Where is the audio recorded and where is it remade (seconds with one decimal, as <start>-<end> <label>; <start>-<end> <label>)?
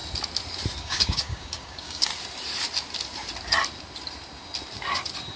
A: 0.0-0.8 recorded; 0.8-2.1 remade; 2.1-5.4 recorded